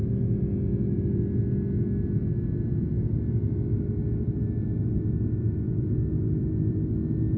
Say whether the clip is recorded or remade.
recorded